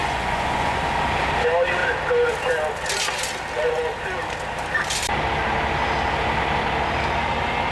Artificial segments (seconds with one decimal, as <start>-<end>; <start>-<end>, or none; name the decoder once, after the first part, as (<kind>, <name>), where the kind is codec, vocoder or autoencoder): 0.0-0.8 (vocoder, Vocos)